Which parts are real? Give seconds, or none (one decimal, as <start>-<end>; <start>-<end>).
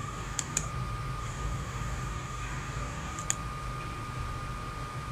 0.7-1.2; 3.2-5.1